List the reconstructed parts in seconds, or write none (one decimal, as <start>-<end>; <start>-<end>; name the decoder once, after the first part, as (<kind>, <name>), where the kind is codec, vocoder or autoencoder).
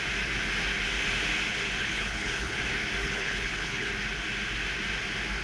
1.8-2.6 (codec, HILCodec); 3.0-3.9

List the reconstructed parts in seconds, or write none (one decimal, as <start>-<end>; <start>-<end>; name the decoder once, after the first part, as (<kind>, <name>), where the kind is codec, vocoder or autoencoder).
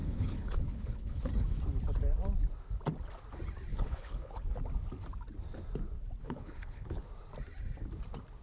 0.0-1.3 (codec, HILCodec); 3.7-4.4; 6.2-7.1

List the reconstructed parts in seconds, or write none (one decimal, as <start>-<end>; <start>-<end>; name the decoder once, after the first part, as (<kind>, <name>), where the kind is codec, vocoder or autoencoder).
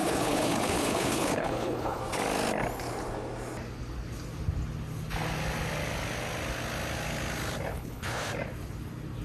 0.0-2.0 (codec, HILCodec); 7.7-8.3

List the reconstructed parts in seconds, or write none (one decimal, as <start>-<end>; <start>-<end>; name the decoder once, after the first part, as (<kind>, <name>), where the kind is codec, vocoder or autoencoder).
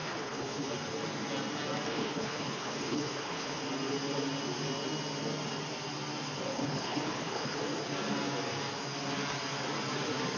0.0-0.7 (codec, HILCodec); 1.9-3.6; 6.5-7.6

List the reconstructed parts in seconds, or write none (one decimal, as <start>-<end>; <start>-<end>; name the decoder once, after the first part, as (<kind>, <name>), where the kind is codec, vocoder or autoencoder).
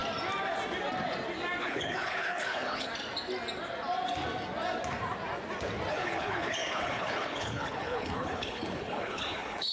1.6-2.9 (codec, HILCodec); 5.9-9.7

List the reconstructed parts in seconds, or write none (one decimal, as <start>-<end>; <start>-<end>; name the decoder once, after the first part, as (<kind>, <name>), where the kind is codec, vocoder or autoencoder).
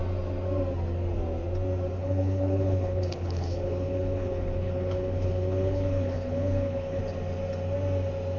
2.0-7.0 (codec, HILCodec)